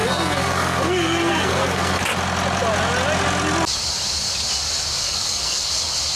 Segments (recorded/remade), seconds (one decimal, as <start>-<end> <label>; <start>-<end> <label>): 0.0-2.0 remade; 2.0-5.0 recorded; 5.0-5.7 remade; 5.7-6.2 recorded